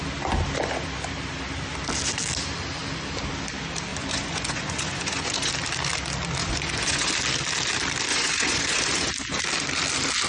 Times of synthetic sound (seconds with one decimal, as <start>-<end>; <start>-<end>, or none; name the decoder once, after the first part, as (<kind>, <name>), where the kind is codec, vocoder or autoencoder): 3.9-5.5 (vocoder, Vocos); 6.4-7.1; 8.1-9.1